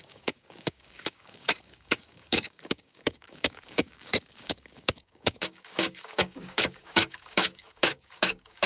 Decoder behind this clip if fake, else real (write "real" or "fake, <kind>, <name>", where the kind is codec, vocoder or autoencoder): fake, codec, DAC